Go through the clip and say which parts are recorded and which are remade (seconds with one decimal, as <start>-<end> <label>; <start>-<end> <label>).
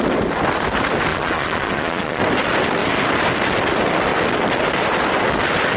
0.0-1.1 recorded; 1.1-2.2 remade; 2.2-5.8 recorded